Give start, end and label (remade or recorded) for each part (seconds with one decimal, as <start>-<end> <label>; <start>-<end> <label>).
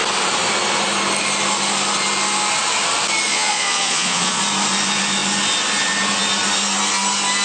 0.0-3.3 recorded; 3.3-4.4 remade; 4.4-7.4 recorded